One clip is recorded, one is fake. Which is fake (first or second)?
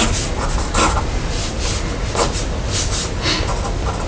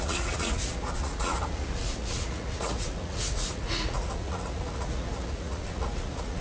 second